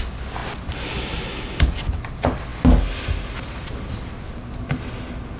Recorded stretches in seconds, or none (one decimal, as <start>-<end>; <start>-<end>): 0.0-5.4